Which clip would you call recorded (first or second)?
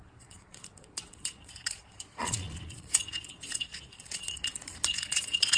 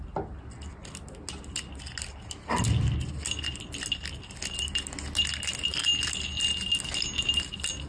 second